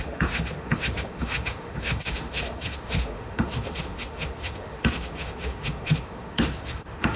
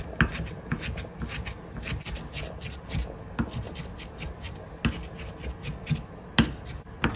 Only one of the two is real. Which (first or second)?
second